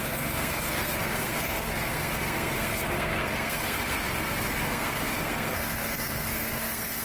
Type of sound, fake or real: fake